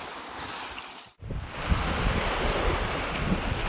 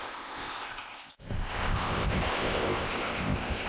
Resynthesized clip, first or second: second